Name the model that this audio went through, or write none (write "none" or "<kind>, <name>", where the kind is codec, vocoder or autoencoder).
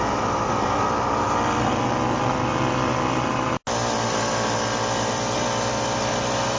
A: none